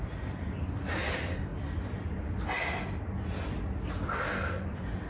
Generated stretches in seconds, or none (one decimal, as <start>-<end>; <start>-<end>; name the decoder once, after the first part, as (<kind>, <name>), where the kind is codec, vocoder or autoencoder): 4.1-4.6 (codec, SNAC)